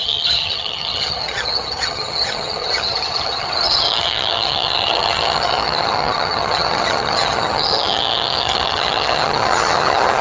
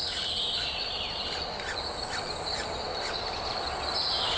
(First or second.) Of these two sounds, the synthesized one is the first